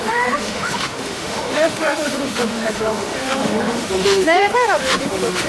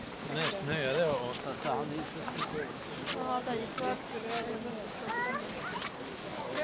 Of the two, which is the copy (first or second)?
first